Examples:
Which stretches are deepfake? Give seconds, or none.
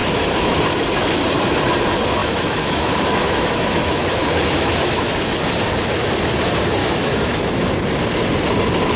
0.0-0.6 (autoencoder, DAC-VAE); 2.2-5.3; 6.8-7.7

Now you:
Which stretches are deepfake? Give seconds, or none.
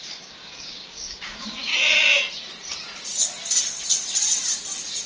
0.0-1.7 (codec, DAC)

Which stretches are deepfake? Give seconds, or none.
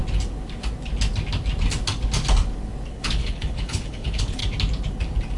2.9-4.4 (codec, HILCodec)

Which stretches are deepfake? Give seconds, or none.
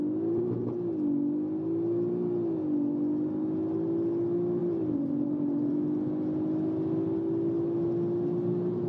4.6-5.7 (vocoder, BigVGAN v2)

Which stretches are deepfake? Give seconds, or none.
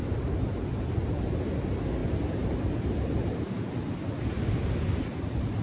0.0-1.0 (vocoder, BigVGAN v2); 2.0-5.6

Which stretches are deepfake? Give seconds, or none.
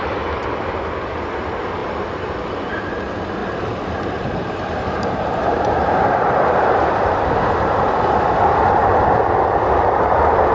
3.4-7.8 (vocoder, BigVGAN v2)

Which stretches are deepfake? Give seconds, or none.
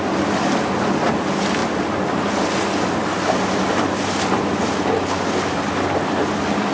none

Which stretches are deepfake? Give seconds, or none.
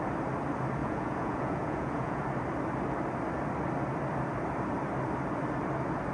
0.8-2.2 (vocoder, Vocos)